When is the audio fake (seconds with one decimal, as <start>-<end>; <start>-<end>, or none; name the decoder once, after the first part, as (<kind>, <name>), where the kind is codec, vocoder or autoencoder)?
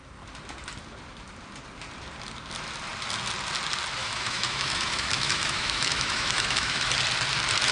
4.0-6.9 (autoencoder, DAC-VAE)